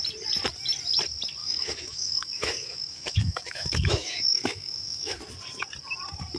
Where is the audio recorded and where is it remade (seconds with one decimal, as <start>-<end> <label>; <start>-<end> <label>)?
0.0-1.4 recorded; 1.4-5.2 remade; 5.2-6.4 recorded